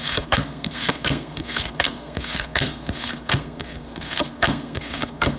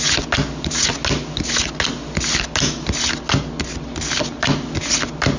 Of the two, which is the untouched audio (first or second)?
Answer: second